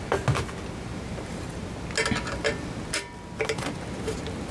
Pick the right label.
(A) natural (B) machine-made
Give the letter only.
A